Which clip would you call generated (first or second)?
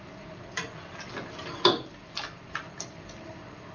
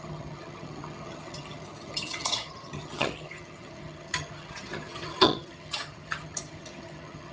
second